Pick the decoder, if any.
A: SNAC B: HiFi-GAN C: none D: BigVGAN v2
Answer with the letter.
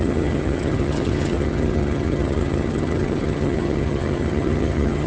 B